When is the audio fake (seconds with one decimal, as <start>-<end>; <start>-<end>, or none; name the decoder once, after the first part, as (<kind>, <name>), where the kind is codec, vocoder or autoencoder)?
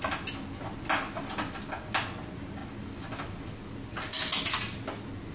none